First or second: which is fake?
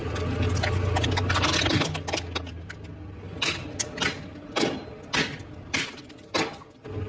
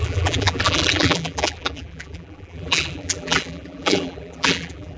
second